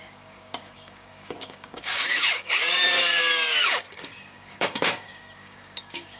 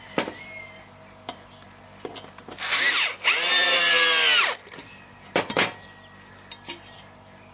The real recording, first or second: second